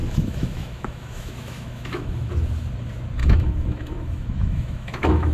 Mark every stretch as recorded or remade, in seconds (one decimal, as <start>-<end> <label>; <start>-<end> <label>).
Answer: 0.0-2.3 remade; 2.3-3.2 recorded; 3.2-5.3 remade

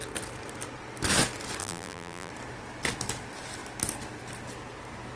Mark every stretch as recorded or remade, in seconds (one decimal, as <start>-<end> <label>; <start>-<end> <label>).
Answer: 0.0-1.6 recorded; 1.6-2.3 remade; 2.3-5.2 recorded